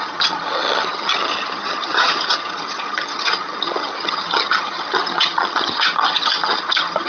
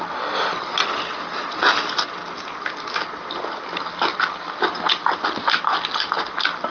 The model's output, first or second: first